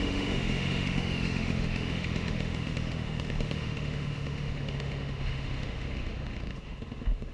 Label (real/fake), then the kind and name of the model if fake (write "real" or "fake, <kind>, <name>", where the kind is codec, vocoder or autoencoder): fake, autoencoder, DAC-VAE